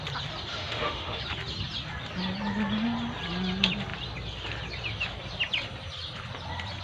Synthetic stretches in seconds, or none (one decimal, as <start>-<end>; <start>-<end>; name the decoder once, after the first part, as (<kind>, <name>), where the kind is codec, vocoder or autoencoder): 0.5-1.2 (autoencoder, DAC-VAE)

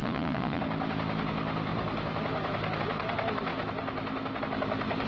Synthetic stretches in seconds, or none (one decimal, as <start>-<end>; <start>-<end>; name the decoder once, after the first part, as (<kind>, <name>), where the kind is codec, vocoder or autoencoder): 0.0-0.6 (vocoder, Vocos)

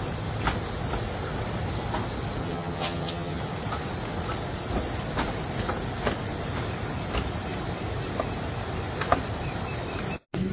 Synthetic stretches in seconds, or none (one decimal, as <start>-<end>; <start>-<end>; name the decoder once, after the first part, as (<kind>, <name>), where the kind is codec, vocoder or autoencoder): 2.4-3.4 (vocoder, HiFi-GAN)